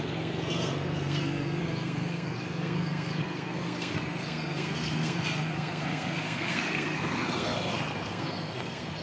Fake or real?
fake